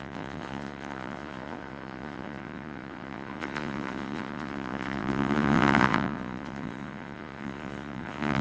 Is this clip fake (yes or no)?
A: yes